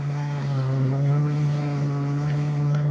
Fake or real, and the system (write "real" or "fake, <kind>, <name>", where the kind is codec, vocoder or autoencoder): fake, codec, SNAC